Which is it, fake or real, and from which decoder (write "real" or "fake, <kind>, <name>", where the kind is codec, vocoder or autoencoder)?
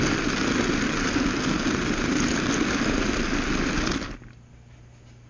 real